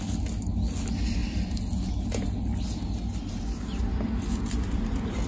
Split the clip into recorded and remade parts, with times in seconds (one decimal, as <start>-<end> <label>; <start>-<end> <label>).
0.0-5.3 recorded